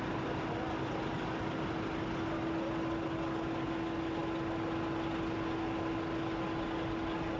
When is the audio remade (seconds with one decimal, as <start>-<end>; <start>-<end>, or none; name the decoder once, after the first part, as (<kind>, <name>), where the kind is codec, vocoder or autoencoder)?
none